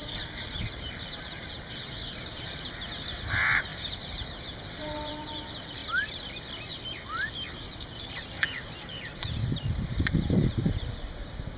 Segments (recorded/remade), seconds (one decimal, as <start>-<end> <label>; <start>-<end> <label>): 0.0-5.8 remade; 5.8-8.1 recorded; 8.1-11.6 remade